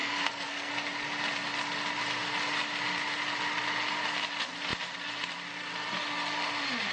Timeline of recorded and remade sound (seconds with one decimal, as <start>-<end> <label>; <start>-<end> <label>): 0.0-0.7 remade; 0.7-6.9 recorded